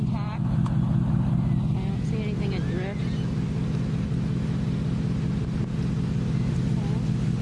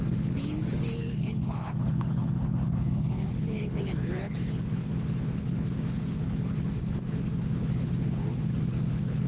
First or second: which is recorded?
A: first